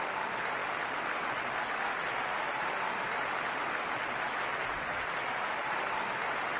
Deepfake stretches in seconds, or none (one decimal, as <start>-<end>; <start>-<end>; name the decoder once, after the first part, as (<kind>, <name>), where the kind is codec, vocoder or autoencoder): none